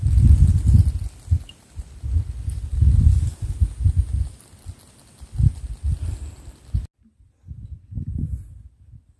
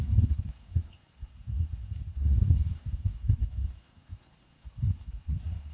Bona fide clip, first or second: first